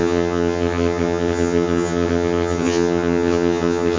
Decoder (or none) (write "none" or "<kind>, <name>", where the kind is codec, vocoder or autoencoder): vocoder, HiFi-GAN